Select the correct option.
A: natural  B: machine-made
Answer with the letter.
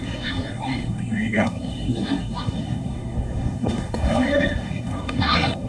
B